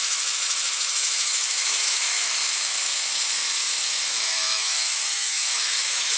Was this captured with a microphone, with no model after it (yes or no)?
no